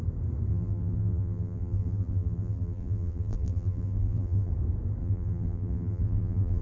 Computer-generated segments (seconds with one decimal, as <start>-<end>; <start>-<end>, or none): 0.5-4.5; 5.0-6.6